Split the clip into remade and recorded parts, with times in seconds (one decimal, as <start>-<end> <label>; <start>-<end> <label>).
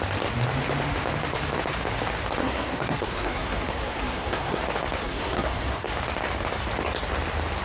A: 0.0-2.4 recorded; 2.4-4.6 remade; 4.6-5.0 recorded; 5.0-5.9 remade; 5.9-7.6 recorded